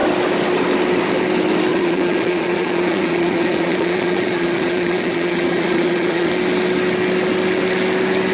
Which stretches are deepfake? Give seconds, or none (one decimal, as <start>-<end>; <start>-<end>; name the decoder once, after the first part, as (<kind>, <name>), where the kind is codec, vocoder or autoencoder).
1.7-6.3 (vocoder, Vocos)